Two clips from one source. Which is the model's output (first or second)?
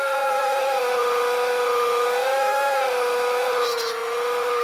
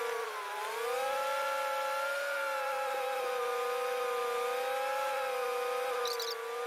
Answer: first